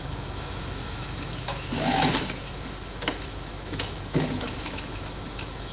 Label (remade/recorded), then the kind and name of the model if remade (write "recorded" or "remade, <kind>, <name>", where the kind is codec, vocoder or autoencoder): remade, autoencoder, DAC-VAE